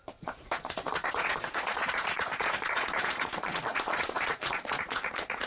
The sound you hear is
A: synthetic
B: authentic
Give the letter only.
A